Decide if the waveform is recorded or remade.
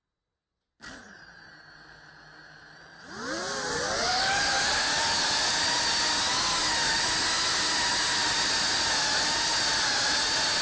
recorded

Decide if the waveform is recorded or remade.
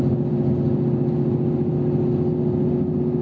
recorded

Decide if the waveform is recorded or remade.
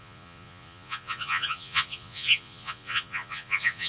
remade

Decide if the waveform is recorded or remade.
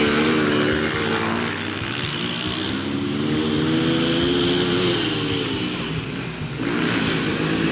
recorded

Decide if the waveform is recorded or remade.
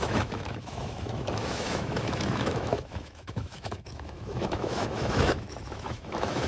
remade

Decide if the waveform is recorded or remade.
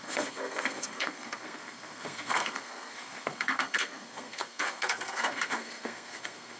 remade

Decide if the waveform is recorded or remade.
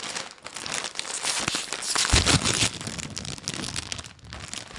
recorded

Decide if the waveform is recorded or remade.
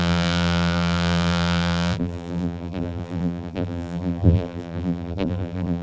remade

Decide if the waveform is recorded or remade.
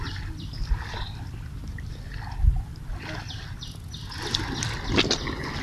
recorded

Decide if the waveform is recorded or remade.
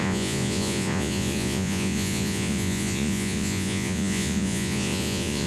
remade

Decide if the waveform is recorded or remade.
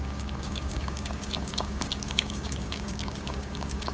remade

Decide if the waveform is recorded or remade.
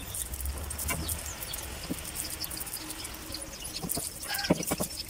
recorded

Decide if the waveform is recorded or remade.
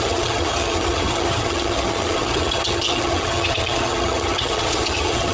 remade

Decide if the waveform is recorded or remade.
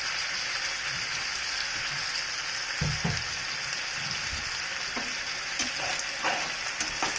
recorded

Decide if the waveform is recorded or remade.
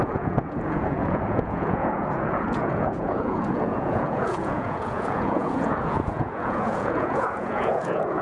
remade